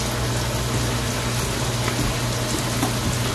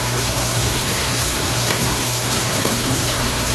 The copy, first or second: second